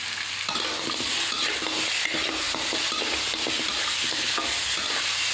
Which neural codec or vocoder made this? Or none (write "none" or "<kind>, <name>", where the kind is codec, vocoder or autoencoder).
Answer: none